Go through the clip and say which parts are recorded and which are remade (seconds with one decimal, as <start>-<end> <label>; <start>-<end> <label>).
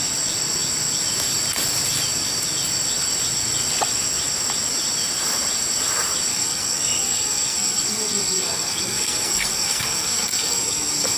0.0-6.3 recorded; 6.3-11.2 remade